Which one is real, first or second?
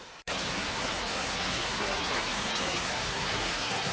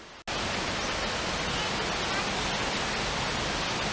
second